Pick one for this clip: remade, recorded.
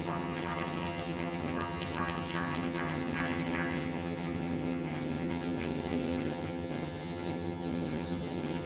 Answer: remade